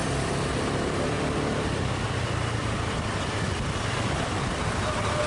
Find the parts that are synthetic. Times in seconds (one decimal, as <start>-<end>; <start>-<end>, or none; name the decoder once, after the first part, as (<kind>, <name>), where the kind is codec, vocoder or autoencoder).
0.5-5.3 (vocoder, BigVGAN v2)